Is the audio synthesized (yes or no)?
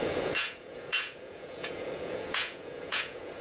yes